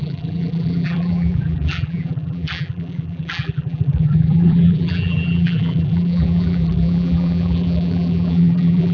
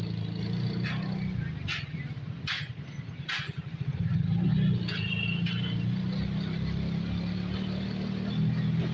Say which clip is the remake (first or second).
first